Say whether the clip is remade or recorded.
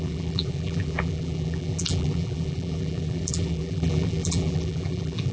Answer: remade